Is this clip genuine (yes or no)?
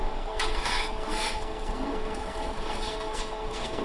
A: no